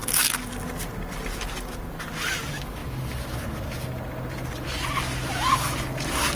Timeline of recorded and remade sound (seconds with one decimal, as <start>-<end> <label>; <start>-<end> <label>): 0.0-6.4 recorded